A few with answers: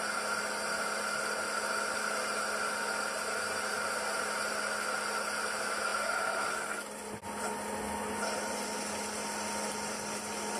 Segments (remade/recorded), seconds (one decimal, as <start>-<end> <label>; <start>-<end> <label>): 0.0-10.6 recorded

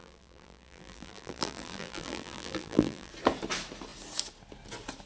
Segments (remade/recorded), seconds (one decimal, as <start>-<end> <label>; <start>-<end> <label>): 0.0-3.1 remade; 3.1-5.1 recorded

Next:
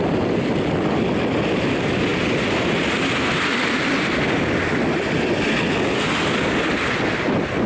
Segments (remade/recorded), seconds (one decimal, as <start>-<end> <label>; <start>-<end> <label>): 0.0-7.7 recorded

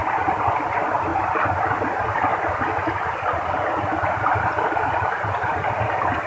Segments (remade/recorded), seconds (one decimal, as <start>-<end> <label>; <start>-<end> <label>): 0.0-6.3 recorded

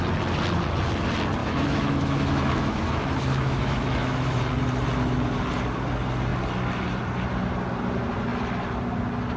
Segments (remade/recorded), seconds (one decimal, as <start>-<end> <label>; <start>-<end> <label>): 0.0-1.4 recorded; 1.4-4.4 remade; 4.4-9.4 recorded

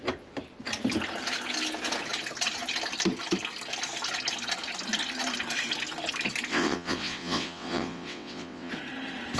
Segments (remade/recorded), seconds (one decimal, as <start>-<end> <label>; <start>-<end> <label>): 0.0-6.5 recorded; 6.5-8.7 remade; 8.7-9.4 recorded

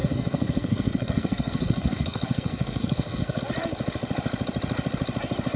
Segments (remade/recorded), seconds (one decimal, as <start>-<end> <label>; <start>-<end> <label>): 0.0-3.4 remade; 3.4-5.6 recorded